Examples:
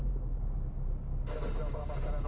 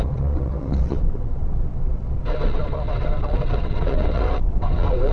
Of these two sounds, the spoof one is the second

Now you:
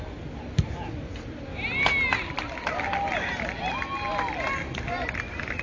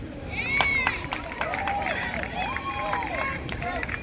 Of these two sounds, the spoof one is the second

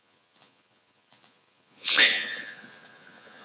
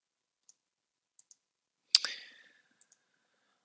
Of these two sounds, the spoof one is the first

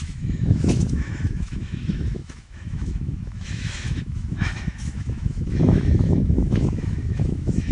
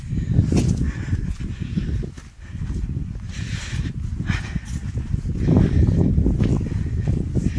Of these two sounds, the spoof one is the first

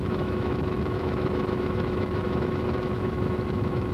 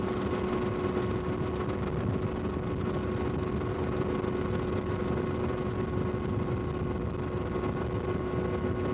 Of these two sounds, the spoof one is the first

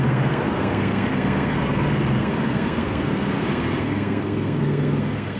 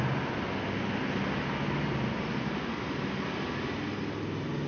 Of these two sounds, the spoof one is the first